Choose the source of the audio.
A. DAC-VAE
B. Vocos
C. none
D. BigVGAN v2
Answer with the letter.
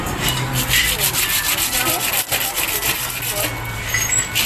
C